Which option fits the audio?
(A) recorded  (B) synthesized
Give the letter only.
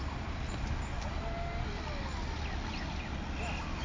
A